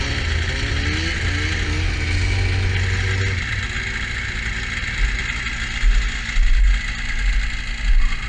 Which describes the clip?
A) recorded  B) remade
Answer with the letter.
A